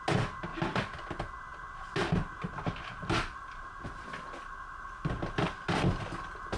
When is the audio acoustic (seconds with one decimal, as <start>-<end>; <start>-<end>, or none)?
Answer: 0.0-6.6